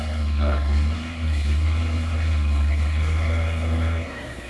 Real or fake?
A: fake